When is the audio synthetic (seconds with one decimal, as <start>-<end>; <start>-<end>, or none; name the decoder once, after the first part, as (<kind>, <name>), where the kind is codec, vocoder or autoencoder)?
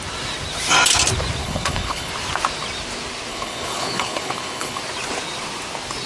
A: 1.4-2.1 (codec, HILCodec); 3.3-4.8